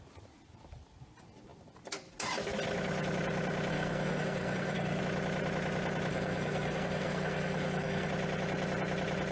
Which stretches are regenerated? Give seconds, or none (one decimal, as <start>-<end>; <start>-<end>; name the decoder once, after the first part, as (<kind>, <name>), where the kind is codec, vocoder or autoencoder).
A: 3.7-5.0 (codec, SNAC); 6.1-8.1